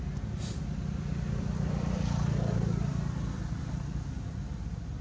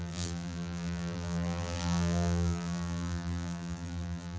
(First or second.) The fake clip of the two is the second